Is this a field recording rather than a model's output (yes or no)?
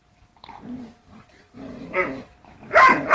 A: no